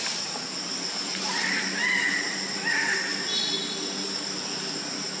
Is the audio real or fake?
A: real